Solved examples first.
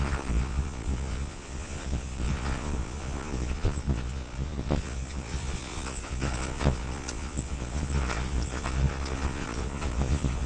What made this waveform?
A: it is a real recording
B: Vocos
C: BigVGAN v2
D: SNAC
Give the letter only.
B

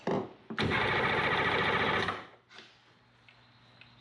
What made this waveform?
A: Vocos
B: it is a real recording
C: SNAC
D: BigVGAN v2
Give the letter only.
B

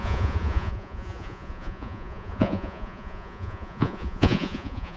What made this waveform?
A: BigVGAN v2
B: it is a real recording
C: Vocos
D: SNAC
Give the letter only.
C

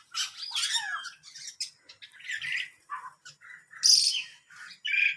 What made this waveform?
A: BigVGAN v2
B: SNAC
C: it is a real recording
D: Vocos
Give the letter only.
C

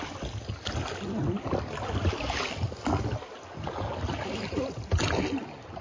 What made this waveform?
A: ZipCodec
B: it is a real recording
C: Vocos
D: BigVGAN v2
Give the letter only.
B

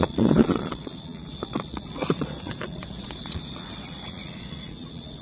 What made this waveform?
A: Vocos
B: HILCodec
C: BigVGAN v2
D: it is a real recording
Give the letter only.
A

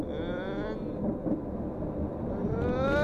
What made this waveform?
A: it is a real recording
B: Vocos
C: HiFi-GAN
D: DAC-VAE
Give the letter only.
A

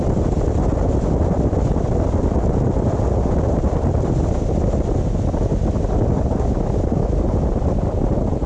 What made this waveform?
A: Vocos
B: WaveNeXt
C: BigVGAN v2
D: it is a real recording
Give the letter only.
D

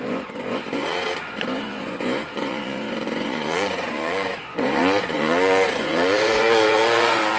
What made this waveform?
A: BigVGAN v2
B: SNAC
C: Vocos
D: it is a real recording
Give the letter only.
C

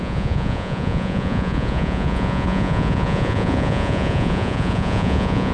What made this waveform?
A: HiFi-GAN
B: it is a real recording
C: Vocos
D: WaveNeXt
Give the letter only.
C